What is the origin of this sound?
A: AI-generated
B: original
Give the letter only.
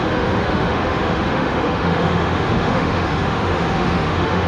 A